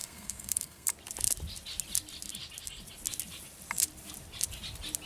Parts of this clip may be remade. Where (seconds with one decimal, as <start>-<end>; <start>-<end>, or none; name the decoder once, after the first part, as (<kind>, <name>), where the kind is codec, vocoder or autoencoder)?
0.0-0.9 (codec, SNAC)